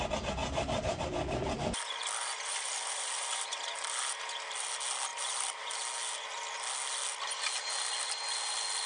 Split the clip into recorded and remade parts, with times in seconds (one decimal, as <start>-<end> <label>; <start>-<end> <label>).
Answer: 0.0-0.4 recorded; 0.4-4.2 remade; 4.2-5.1 recorded; 5.1-5.7 remade; 5.7-8.9 recorded